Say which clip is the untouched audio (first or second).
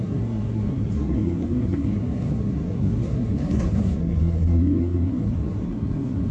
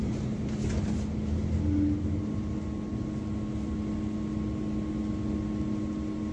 second